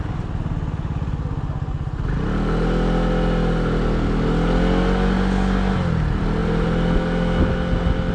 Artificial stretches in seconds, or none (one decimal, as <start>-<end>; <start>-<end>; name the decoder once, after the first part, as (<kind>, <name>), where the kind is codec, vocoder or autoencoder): none